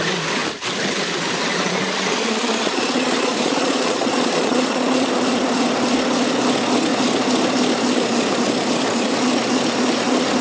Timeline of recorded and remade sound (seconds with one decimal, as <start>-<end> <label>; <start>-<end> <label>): 0.0-1.5 recorded; 1.5-5.1 remade; 5.1-10.4 recorded